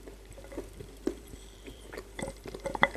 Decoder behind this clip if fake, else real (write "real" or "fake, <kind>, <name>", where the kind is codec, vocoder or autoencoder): fake, vocoder, BigVGAN v2